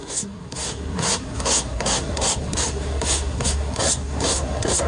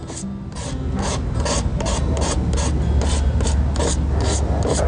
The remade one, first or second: first